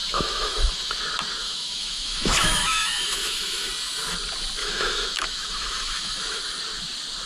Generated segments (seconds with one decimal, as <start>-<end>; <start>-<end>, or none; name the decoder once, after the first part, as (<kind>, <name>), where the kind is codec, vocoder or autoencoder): 0.0-0.9 (autoencoder, DAC-VAE); 1.4-3.7; 4.6-6.4